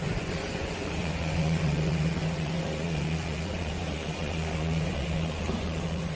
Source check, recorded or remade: remade